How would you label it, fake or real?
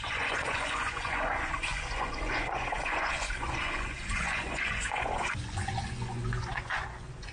fake